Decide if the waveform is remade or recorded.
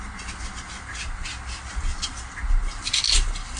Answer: recorded